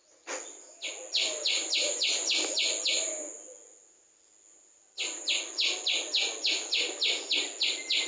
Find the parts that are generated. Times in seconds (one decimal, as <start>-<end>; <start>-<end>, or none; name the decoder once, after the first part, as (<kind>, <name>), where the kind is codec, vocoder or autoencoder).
none